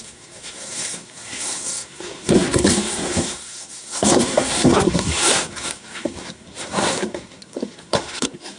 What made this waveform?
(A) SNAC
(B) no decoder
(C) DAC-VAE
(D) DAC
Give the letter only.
A